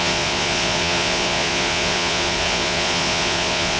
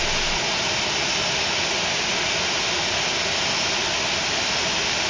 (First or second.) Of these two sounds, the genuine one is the second